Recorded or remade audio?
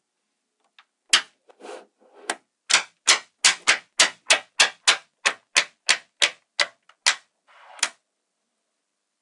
recorded